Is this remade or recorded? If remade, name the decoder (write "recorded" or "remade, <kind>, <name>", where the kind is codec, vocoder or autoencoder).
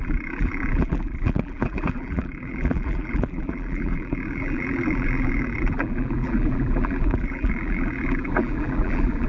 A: remade, vocoder, BigVGAN v2